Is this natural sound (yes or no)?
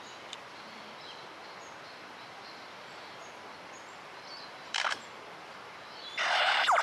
no